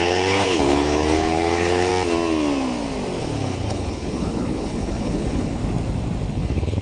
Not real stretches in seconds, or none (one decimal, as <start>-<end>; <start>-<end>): 0.0-1.9; 3.2-5.6; 6.3-6.8